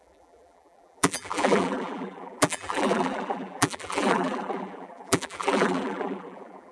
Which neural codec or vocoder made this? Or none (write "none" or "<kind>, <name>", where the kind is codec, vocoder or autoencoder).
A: vocoder, BigVGAN v2